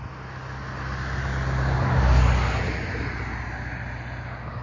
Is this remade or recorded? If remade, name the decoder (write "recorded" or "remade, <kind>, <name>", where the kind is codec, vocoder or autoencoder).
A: recorded